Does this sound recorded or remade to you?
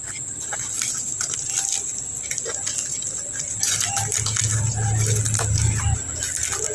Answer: recorded